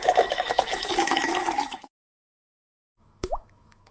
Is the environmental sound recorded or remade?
remade